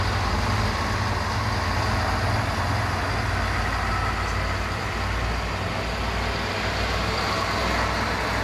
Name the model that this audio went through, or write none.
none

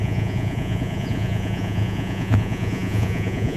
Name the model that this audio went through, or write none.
vocoder, Vocos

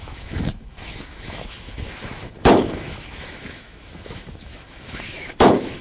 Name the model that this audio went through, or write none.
autoencoder, DAC-VAE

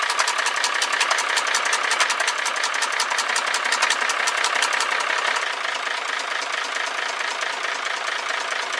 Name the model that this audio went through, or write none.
none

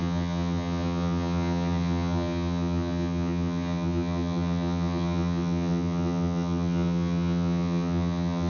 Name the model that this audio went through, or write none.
vocoder, HiFi-GAN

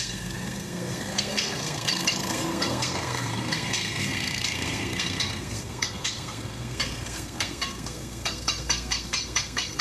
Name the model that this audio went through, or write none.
codec, SNAC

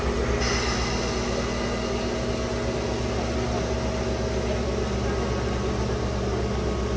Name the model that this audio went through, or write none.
none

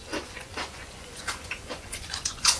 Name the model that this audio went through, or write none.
vocoder, Vocos